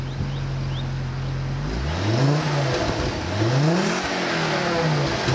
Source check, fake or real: real